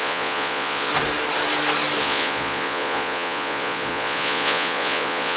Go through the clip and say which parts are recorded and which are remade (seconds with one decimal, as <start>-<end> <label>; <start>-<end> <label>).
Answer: 0.0-0.9 remade; 0.9-2.0 recorded; 2.0-5.4 remade